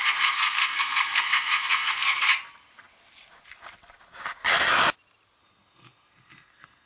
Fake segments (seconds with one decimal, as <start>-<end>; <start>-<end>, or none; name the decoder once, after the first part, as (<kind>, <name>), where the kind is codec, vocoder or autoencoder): 0.0-2.3 (codec, SNAC); 5.4-6.9